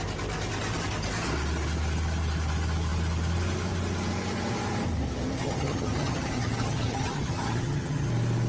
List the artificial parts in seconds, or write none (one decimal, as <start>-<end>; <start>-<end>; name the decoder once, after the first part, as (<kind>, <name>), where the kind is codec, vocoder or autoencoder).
5.4-8.1 (vocoder, HiFi-GAN)